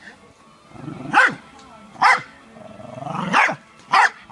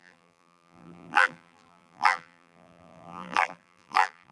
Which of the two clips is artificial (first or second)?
second